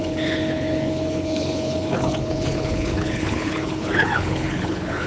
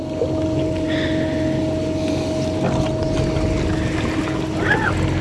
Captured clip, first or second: second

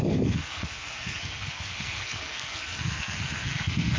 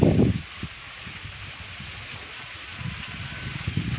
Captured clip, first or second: second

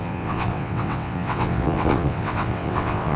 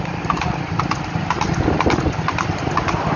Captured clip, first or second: second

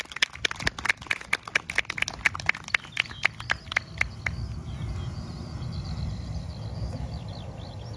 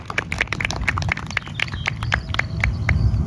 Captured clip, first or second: first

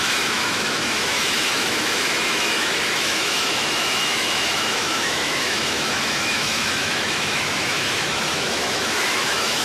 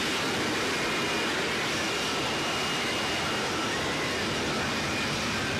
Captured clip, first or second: second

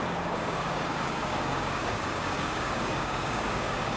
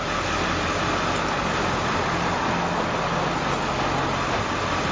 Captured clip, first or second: second